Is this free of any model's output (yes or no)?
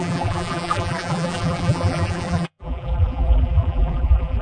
no